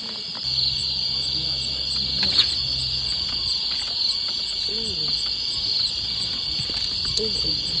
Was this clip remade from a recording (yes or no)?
no